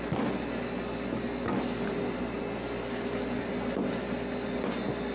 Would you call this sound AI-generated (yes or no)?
no